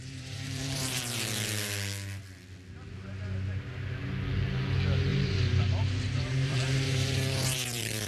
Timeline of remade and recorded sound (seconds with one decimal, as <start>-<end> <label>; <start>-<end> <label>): 0.0-1.2 remade; 1.2-5.1 recorded; 5.1-8.1 remade

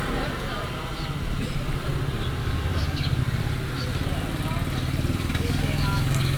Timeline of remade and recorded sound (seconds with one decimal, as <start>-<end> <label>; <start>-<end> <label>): 0.0-2.4 recorded; 2.4-3.2 remade; 3.2-5.3 recorded; 5.3-6.4 remade

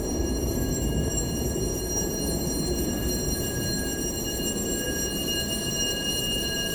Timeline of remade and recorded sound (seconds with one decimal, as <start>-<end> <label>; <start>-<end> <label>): 0.0-0.4 recorded; 0.4-1.2 remade; 1.2-6.7 recorded

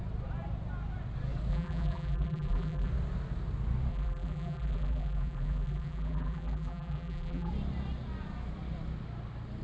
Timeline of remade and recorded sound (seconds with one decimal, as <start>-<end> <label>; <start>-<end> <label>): 0.0-1.5 recorded; 1.5-2.9 remade; 2.9-3.9 recorded; 3.9-7.5 remade; 7.5-9.6 recorded